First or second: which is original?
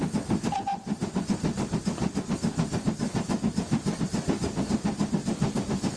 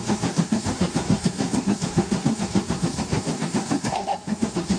first